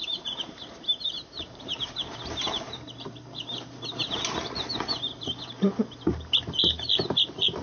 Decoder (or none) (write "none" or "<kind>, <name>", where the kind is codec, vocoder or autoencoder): vocoder, BigVGAN v2